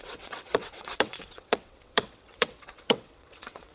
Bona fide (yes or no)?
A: no